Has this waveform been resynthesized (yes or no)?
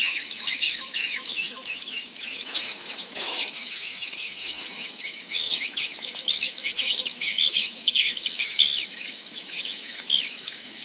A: yes